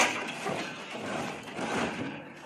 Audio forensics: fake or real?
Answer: real